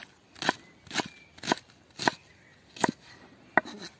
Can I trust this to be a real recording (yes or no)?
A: yes